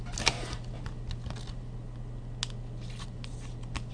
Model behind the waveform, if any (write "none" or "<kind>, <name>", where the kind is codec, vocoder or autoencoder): none